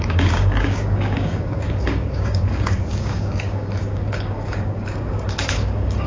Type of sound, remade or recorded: remade